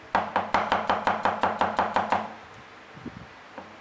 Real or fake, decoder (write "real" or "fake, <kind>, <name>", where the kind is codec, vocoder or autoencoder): real